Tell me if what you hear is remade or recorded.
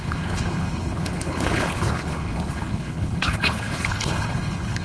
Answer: remade